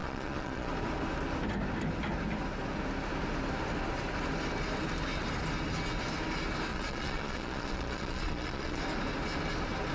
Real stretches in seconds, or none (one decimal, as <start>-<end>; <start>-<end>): 0.7-6.7; 8.8-9.9